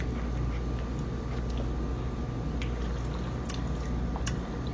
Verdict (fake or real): real